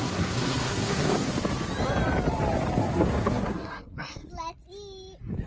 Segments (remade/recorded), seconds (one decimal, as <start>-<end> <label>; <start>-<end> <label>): 0.0-1.3 remade; 1.3-2.8 recorded; 2.8-4.3 remade; 4.3-5.5 recorded